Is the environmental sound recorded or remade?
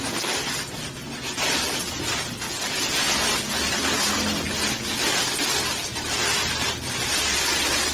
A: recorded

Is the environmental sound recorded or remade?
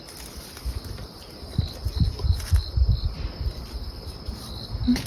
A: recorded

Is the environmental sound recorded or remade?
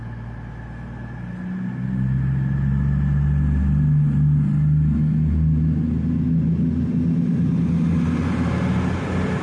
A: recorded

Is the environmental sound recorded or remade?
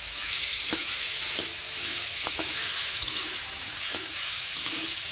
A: remade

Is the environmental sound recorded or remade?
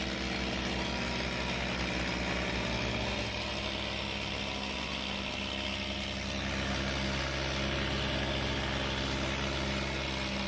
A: recorded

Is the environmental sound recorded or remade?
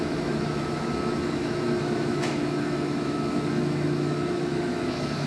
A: remade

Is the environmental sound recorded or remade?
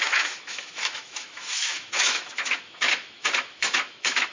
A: remade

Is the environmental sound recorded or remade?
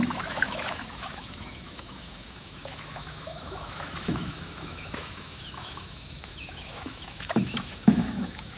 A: remade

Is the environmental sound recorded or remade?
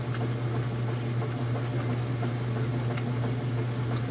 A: recorded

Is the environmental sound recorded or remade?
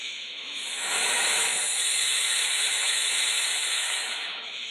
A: remade